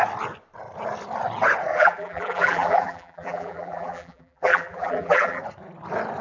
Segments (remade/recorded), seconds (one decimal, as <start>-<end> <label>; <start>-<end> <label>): 0.0-1.7 recorded; 1.7-5.4 remade; 5.4-6.2 recorded